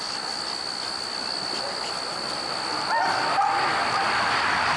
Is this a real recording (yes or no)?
yes